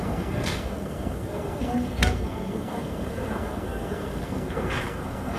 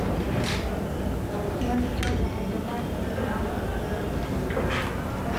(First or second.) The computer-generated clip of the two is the first